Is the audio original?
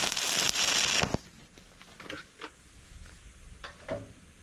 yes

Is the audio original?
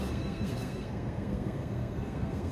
no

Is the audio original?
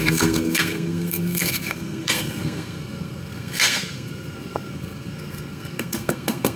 no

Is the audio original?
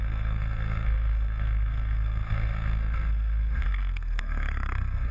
no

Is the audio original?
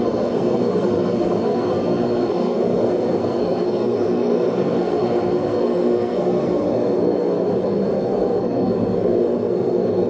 no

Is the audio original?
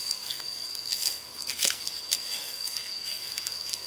no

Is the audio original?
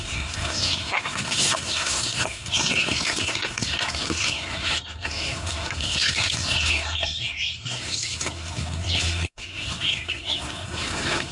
no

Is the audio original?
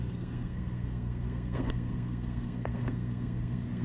no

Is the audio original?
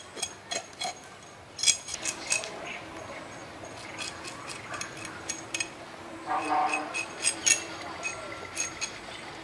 yes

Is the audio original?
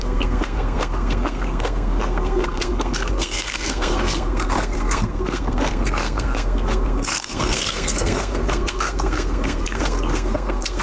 no